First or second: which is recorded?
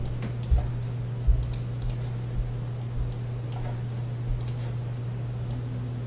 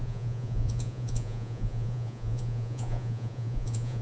first